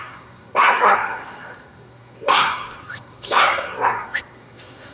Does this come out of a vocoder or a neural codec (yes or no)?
yes